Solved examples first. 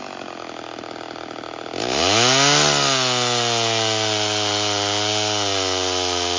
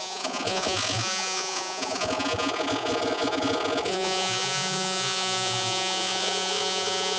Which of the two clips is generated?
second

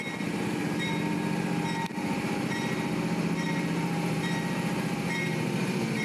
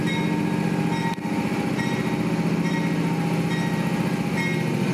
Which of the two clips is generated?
first